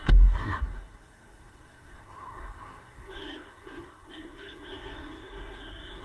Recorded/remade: remade